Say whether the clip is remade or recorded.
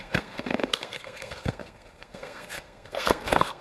remade